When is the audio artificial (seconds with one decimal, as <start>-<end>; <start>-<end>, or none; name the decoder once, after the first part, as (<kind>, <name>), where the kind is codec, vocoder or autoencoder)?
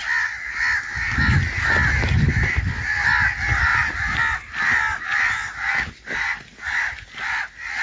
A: none